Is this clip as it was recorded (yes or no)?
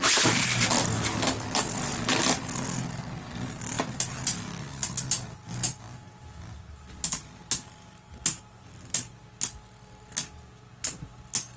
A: yes